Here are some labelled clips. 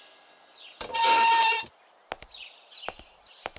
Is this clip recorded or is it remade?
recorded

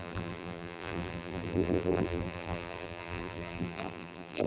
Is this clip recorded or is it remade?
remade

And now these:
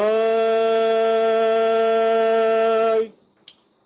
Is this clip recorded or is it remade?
recorded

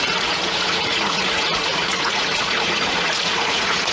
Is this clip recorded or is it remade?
remade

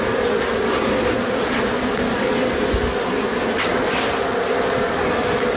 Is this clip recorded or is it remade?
recorded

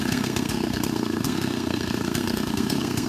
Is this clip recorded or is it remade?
remade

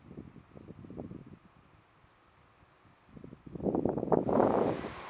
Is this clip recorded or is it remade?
recorded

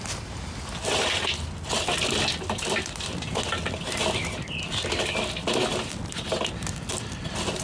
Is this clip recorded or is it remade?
recorded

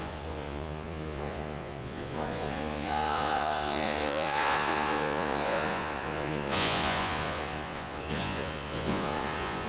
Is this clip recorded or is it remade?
remade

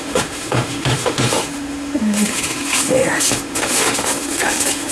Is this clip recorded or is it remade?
remade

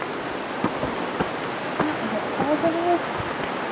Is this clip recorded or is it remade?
recorded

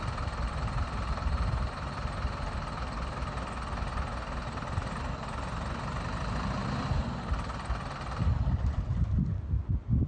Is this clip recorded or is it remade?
recorded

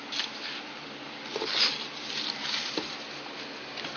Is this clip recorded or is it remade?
recorded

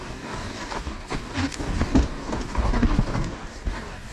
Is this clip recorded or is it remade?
remade